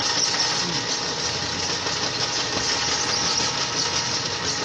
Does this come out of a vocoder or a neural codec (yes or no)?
no